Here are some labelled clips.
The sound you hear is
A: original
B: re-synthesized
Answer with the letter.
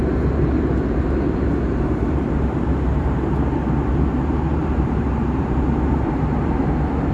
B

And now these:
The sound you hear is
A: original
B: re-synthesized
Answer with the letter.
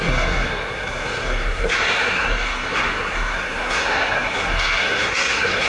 B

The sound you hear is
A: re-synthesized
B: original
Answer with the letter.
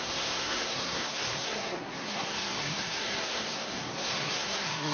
A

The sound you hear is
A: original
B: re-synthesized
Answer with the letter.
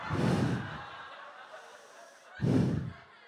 A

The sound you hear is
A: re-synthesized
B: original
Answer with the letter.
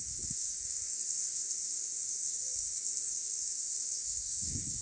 A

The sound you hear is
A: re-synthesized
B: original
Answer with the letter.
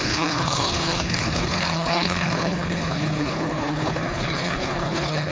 A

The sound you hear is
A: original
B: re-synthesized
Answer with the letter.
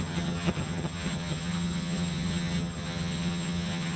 B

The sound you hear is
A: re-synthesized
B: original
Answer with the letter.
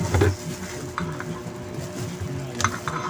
B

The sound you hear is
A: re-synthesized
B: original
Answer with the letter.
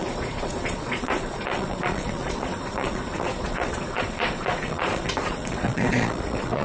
A